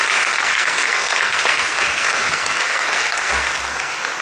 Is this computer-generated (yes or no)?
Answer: yes